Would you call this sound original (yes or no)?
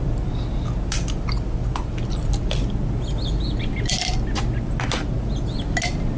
yes